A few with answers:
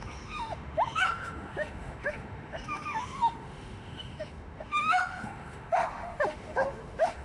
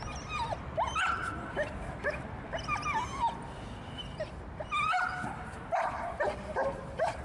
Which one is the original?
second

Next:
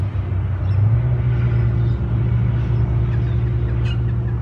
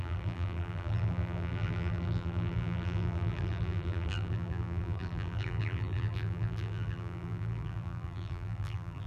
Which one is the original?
first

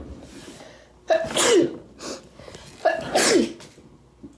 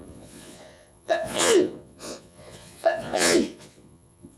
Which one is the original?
first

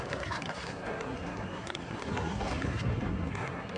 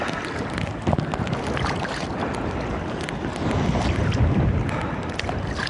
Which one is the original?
second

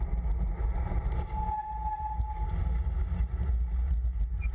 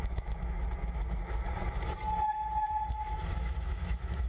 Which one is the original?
first